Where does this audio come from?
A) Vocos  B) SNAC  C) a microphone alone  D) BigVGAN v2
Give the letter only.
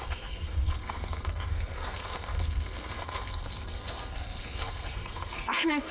B